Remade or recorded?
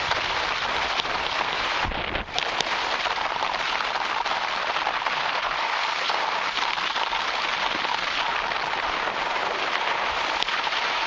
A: recorded